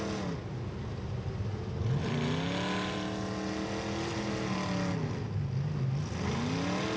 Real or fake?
real